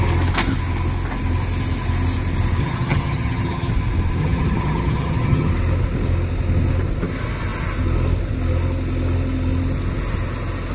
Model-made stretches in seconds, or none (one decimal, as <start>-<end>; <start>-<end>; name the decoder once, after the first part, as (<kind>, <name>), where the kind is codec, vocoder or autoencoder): 2.6-3.7 (vocoder, HiFi-GAN); 4.2-5.5